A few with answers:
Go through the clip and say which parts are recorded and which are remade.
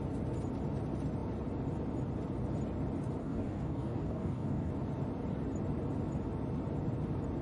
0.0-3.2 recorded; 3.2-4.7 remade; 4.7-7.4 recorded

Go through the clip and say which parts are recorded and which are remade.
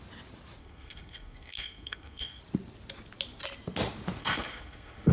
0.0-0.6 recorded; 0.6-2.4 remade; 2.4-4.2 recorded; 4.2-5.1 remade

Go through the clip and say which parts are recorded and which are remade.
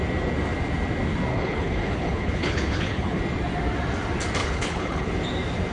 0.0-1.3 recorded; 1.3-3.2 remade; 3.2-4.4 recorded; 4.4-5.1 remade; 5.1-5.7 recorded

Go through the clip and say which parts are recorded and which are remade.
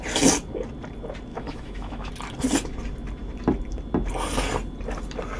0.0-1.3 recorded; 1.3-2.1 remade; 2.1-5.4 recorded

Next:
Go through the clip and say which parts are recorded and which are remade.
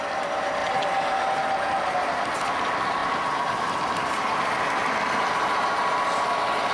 0.0-6.7 recorded